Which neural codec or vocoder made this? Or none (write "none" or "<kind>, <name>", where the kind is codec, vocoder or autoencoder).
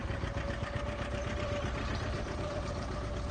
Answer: vocoder, BigVGAN v2